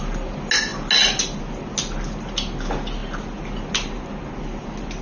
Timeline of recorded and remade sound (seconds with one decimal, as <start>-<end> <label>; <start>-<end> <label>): 0.0-5.0 recorded